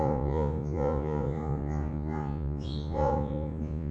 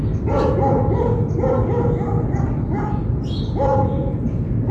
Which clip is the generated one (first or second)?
first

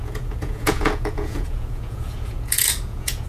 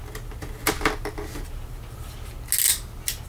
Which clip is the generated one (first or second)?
first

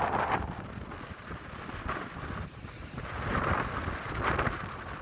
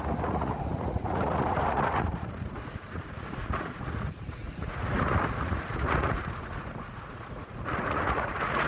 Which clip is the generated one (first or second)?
second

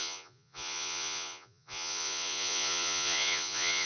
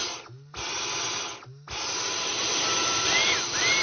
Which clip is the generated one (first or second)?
first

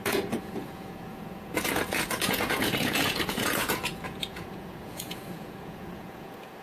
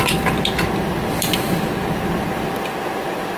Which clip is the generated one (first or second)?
first